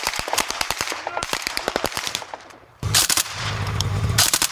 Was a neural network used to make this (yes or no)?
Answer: yes